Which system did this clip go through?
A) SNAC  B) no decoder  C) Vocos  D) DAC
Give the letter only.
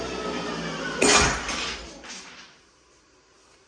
B